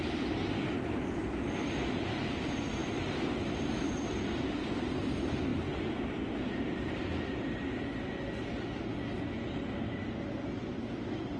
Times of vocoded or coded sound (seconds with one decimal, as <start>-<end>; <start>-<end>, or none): none